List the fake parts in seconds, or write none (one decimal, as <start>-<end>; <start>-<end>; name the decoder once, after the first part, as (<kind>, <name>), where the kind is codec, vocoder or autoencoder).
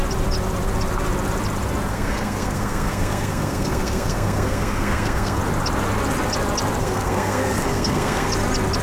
1.9-5.4 (codec, SNAC); 6.8-8.3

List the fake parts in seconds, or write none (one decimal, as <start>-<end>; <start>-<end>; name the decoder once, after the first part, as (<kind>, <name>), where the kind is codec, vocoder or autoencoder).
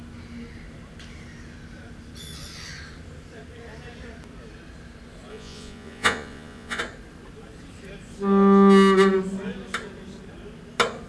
5.3-6.8 (vocoder, Vocos)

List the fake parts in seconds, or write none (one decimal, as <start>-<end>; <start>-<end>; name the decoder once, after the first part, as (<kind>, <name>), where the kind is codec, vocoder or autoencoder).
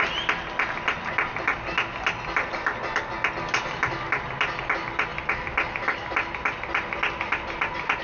none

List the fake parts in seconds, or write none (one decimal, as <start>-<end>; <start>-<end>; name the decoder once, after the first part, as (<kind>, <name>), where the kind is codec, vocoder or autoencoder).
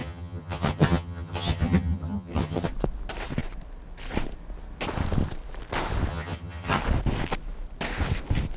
0.0-2.7 (vocoder, HiFi-GAN); 6.1-6.8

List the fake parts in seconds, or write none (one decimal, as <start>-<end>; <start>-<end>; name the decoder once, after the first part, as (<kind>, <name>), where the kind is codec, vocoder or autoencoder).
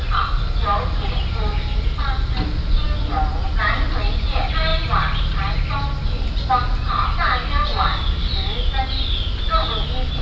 none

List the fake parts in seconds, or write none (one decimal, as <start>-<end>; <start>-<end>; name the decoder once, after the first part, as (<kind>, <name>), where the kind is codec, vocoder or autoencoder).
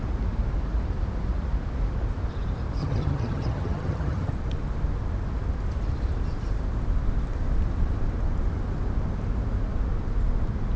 2.8-4.3 (vocoder, HiFi-GAN)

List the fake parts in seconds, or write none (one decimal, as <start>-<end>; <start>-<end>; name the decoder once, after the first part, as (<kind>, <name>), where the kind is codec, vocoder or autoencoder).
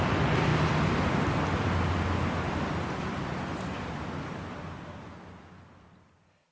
none